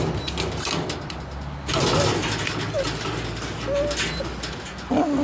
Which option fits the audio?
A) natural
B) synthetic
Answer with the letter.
A